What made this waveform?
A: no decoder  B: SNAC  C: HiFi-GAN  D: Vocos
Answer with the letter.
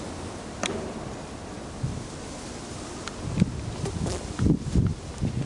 A